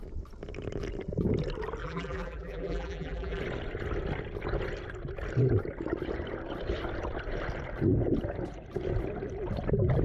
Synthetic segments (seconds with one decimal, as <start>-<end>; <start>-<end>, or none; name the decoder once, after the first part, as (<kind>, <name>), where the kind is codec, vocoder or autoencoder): 1.8-3.4 (vocoder, BigVGAN v2)